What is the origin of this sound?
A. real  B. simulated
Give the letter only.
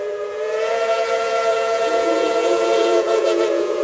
B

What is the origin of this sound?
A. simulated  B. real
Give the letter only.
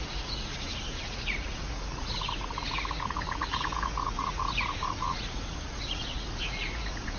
A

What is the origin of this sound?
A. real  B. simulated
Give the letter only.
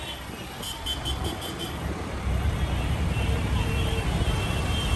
B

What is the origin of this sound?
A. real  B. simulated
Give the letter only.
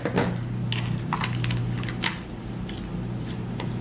A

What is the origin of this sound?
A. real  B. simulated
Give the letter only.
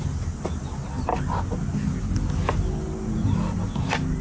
A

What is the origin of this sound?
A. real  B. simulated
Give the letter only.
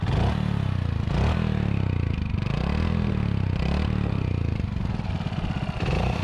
A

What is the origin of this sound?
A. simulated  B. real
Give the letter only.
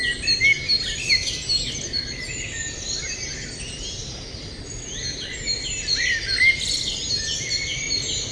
B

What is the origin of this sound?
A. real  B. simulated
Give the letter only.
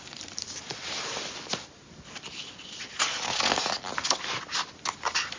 A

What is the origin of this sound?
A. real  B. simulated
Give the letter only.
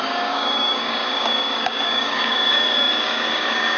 B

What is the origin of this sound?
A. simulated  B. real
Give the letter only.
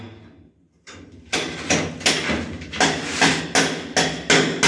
B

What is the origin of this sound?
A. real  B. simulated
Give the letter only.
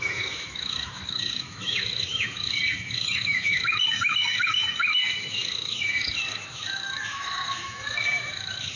B